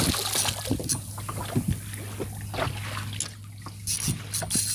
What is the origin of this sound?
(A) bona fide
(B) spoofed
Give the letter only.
A